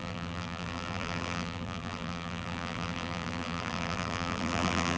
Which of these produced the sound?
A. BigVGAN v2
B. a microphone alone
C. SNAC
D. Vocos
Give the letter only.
A